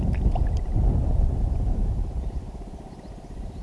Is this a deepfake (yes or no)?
no